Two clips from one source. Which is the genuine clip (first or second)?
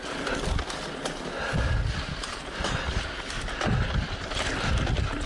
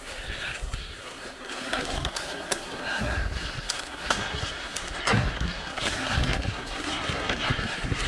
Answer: first